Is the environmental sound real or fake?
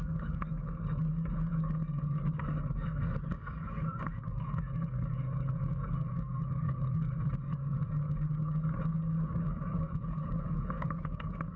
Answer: fake